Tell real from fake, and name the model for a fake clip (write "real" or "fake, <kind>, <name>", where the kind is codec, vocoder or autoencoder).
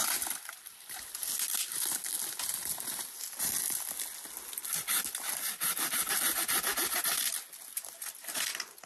real